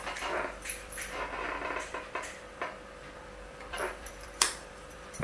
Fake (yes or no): yes